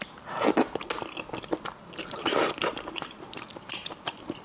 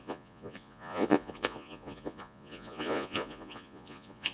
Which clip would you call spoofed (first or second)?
second